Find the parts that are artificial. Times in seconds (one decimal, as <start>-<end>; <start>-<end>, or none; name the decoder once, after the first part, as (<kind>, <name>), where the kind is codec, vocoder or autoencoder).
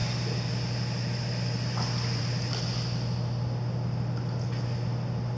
none